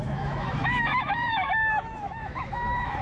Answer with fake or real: fake